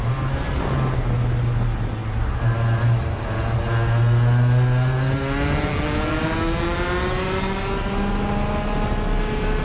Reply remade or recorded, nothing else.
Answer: recorded